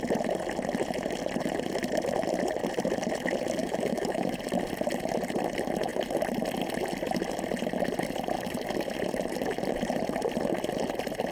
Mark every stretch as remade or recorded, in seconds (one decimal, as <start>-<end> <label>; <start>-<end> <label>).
0.0-3.6 recorded; 3.6-4.3 remade; 4.3-11.3 recorded